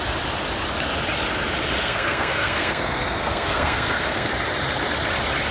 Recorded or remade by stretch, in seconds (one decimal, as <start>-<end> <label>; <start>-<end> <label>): 0.0-1.8 recorded; 1.8-4.3 remade; 4.3-5.5 recorded